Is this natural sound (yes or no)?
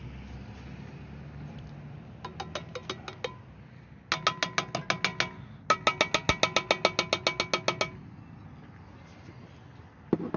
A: yes